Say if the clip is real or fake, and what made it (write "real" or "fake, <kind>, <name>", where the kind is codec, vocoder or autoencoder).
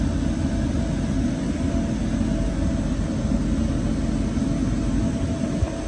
real